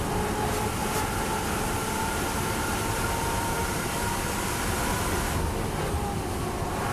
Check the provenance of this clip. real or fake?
real